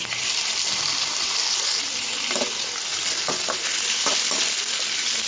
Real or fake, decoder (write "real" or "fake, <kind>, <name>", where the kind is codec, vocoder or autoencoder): real